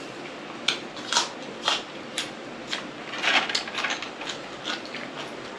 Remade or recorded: recorded